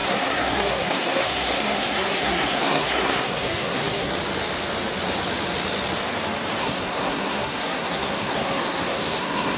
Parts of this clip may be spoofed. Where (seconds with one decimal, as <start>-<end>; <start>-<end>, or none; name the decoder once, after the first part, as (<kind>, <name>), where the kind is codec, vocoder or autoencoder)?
0.0-4.1 (codec, SNAC); 6.6-9.6